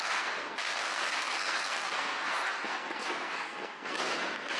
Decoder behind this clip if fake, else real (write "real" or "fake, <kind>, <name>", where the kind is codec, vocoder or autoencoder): fake, codec, SNAC